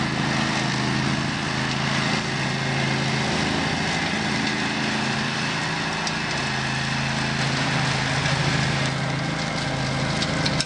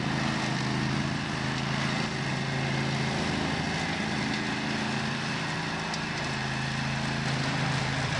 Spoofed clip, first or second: second